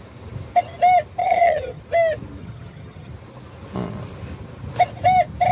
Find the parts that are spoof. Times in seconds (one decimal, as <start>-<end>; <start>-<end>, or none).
1.2-1.8; 2.4-3.1